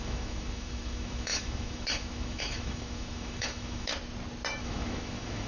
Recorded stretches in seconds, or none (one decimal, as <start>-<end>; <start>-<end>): 3.9-4.6